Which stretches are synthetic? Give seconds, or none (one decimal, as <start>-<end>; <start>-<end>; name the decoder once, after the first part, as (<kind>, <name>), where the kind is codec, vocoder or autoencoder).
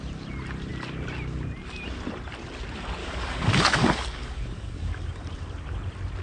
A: 3.0-5.0 (codec, DAC)